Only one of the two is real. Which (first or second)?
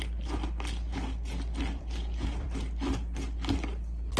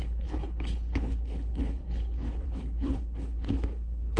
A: first